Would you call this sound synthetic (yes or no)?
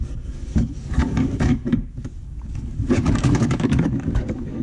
yes